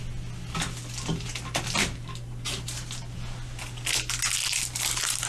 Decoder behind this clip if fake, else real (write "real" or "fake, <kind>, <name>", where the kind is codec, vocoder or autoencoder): real